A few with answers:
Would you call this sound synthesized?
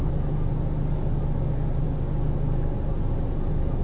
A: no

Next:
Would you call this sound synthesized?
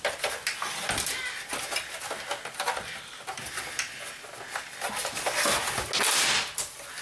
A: no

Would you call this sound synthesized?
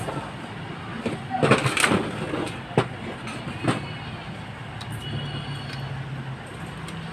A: no